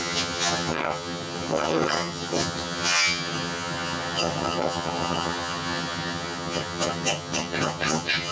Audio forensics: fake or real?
fake